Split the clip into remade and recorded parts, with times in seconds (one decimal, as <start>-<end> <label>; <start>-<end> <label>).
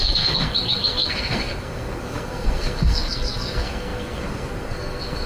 0.0-5.3 remade